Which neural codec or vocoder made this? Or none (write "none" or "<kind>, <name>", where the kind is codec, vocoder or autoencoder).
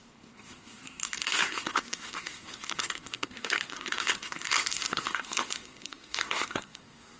codec, SNAC